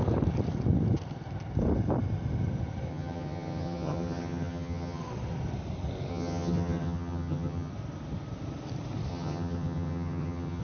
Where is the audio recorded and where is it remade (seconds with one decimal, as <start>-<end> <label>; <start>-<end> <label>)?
0.0-2.9 recorded; 2.9-5.0 remade; 5.0-6.1 recorded; 6.1-7.7 remade; 7.7-9.1 recorded; 9.1-10.6 remade